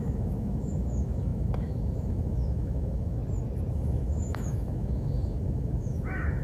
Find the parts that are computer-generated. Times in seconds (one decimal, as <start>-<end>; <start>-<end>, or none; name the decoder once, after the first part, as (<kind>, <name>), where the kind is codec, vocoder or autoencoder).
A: 0.0-3.2 (autoencoder, DAC-VAE); 3.7-6.4